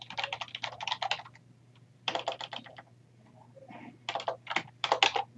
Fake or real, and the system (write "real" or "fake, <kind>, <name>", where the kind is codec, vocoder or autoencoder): real